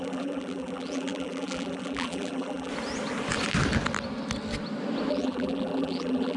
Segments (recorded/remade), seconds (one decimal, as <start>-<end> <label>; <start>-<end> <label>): 0.0-2.7 remade; 2.7-5.1 recorded; 5.1-6.4 remade